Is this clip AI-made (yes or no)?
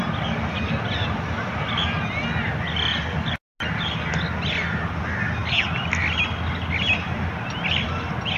no